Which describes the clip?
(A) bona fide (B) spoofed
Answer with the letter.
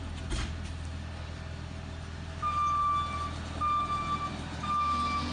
A